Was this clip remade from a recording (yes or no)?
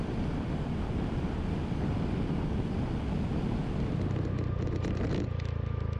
no